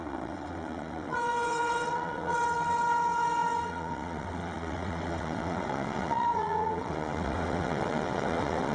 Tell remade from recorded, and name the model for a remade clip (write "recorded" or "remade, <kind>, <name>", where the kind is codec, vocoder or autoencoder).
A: remade, vocoder, WaveNeXt